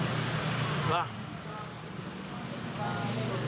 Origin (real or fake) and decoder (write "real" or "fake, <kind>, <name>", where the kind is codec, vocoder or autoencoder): real